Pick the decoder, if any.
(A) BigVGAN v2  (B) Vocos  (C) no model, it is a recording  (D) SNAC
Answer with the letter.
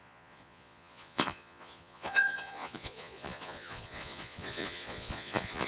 B